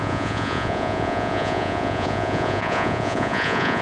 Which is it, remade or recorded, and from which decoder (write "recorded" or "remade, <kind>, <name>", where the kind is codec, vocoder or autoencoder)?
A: remade, vocoder, Vocos